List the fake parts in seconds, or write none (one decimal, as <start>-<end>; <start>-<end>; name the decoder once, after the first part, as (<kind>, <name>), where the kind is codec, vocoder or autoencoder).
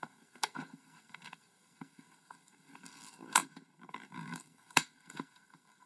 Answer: 0.0-5.9 (codec, SNAC)